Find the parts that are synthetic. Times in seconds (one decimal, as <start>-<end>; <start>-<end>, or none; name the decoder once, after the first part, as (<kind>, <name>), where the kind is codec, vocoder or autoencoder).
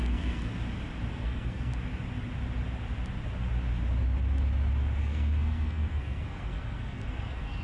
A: 0.0-0.5 (codec, SNAC); 1.1-1.7; 5.0-7.6